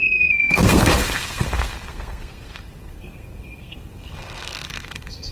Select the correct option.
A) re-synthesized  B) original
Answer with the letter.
A